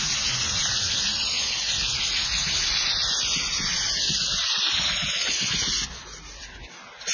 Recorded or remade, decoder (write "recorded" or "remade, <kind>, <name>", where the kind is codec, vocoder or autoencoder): recorded